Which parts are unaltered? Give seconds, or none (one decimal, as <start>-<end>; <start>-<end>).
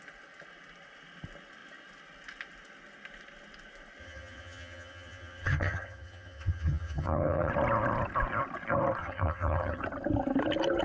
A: 0.0-4.0; 7.5-9.0; 9.8-10.8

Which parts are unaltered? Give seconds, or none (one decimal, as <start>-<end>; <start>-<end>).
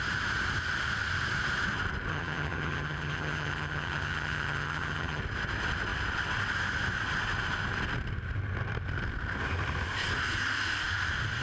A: 0.0-2.1; 5.2-11.4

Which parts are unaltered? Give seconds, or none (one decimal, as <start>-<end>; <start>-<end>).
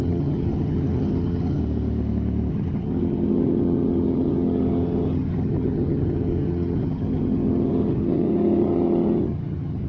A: 1.6-2.5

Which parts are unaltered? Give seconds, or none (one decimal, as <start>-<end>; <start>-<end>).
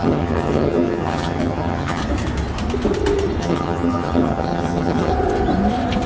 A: 2.0-3.4; 5.1-6.1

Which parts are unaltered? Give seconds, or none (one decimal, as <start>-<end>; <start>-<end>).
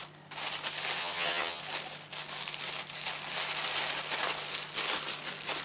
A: 0.0-1.0; 1.6-5.6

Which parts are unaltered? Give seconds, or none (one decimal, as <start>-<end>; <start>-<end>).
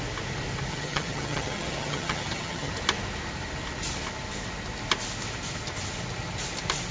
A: 0.0-0.7; 2.7-6.9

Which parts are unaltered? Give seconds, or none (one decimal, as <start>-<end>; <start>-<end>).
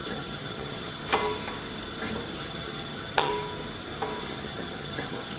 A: 1.0-2.4; 3.3-4.2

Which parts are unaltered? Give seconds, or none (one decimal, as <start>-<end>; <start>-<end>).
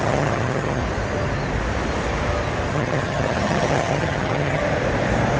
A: 0.8-2.7; 4.6-5.4